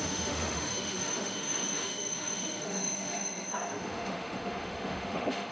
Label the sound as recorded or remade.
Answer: remade